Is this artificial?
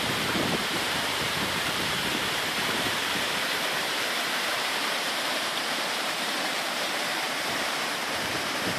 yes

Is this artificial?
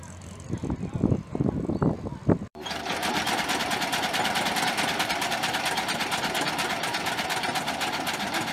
yes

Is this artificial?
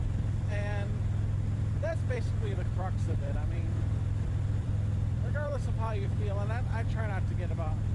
yes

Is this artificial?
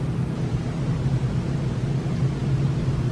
no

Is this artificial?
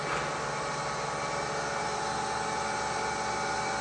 no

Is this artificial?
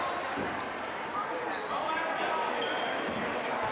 no